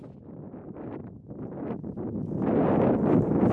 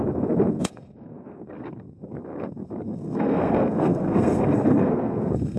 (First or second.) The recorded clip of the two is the first